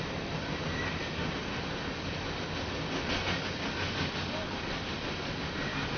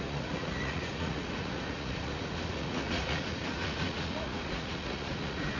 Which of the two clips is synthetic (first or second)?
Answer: second